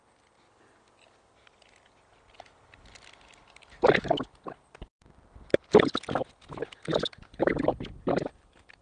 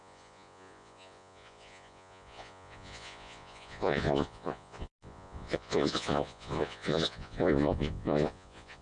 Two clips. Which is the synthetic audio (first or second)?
second